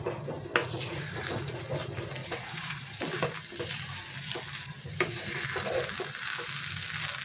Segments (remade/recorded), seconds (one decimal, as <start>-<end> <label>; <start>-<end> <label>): 0.0-0.6 recorded; 0.6-1.6 remade; 1.6-2.2 recorded; 2.2-3.0 remade; 3.0-7.2 recorded

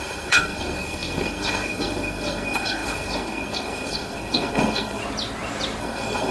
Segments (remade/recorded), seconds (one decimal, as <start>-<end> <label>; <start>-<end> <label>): 0.0-5.0 remade; 5.0-5.8 recorded; 5.8-6.3 remade

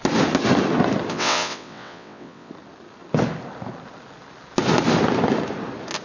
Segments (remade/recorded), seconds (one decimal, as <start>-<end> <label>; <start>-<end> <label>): 0.0-1.1 recorded; 1.1-2.5 remade; 2.5-6.0 recorded

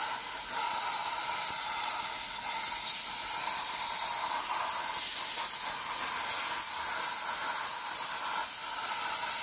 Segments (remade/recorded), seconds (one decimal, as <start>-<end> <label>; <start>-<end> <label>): 0.0-9.4 recorded